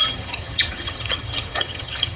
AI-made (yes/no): yes